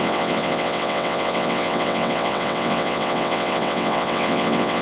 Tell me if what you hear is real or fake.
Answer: fake